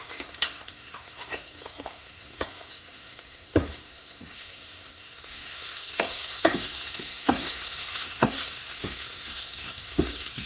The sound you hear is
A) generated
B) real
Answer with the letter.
A